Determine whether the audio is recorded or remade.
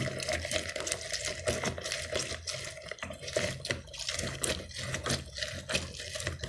recorded